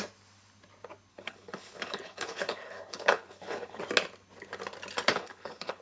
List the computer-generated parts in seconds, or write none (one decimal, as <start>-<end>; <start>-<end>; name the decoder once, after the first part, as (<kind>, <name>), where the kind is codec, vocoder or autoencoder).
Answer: 1.1-3.8 (codec, HILCodec); 5.1-5.8